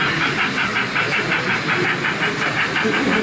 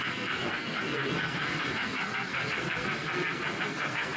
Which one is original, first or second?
first